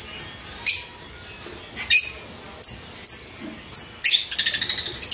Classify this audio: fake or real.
real